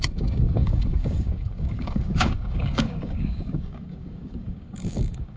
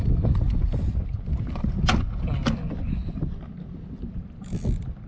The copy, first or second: first